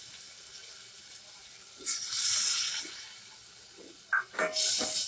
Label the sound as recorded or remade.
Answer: recorded